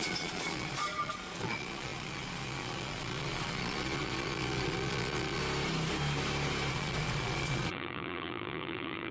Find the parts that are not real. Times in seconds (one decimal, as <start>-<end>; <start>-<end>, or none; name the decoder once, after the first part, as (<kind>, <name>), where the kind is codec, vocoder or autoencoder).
0.0-5.4 (vocoder, Vocos); 6.7-9.1